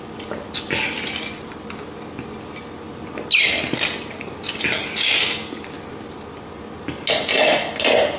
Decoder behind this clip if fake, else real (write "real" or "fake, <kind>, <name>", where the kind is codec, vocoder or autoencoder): real